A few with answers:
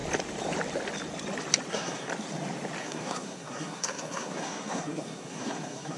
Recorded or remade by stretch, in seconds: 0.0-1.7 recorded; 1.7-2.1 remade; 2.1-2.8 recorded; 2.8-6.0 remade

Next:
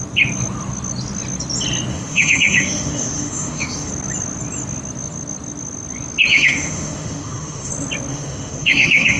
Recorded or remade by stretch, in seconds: 0.0-1.9 recorded; 1.9-3.9 remade; 3.9-6.3 recorded; 6.3-7.7 remade; 7.7-8.1 recorded; 8.1-9.2 remade

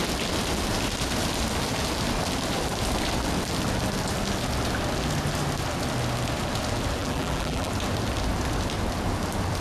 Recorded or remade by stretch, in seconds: 0.0-7.0 recorded; 7.0-7.7 remade; 7.7-9.6 recorded

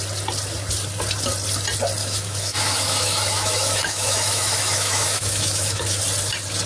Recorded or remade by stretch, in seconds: 0.0-2.0 recorded; 2.0-6.0 remade; 6.0-6.7 recorded

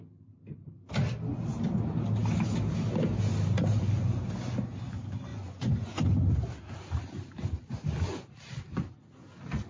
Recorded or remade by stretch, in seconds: 0.0-5.3 recorded; 5.3-6.1 remade; 6.1-9.7 recorded

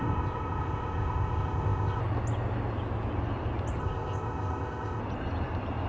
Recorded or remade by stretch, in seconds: 0.0-2.0 remade; 2.0-3.8 recorded; 3.8-5.0 remade; 5.0-5.9 recorded

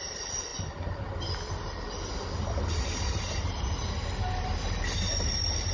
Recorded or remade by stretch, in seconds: 0.0-5.7 recorded

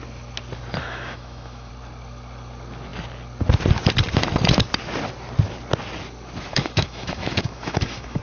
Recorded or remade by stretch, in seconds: 0.0-0.8 recorded; 0.8-1.7 remade; 1.7-6.5 recorded; 6.5-8.2 remade